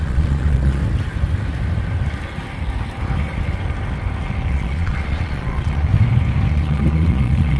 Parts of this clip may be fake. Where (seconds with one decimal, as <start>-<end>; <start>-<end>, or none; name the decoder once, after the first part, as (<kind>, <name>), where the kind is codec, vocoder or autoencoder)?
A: 0.0-0.8 (vocoder, Vocos); 4.5-5.9; 6.5-7.6